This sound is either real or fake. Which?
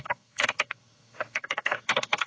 fake